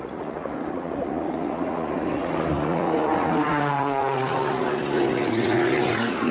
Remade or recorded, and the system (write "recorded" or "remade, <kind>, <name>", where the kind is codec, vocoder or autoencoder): remade, vocoder, Vocos